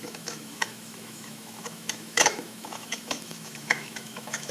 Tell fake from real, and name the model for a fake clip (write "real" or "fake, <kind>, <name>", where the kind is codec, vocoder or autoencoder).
fake, autoencoder, DAC-VAE